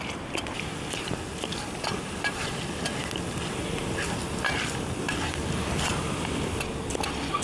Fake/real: real